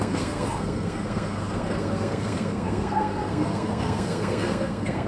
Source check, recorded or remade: remade